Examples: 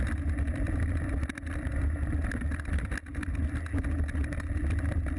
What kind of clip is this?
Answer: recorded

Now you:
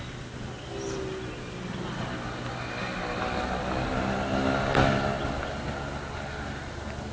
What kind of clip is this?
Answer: recorded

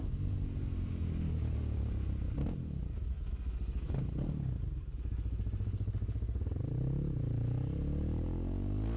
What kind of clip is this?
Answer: recorded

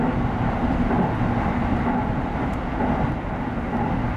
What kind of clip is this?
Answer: recorded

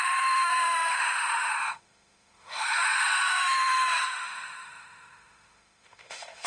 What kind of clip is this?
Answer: remade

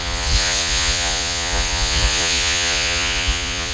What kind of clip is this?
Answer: remade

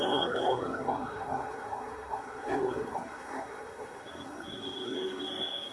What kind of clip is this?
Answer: remade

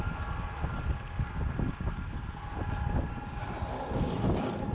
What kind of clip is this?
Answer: recorded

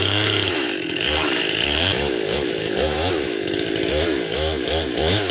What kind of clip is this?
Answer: remade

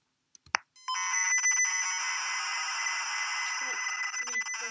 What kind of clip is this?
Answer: recorded